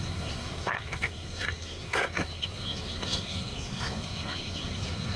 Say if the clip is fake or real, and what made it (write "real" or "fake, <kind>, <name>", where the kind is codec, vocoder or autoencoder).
fake, codec, SNAC